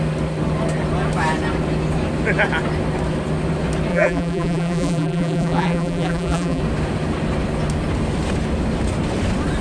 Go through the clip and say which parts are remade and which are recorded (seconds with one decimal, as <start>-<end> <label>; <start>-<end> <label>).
0.0-3.9 recorded; 3.9-6.6 remade; 6.6-9.6 recorded